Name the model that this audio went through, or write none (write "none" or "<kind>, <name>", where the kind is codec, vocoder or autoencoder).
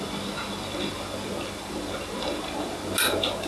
none